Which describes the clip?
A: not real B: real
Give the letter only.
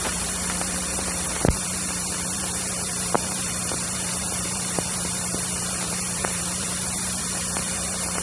A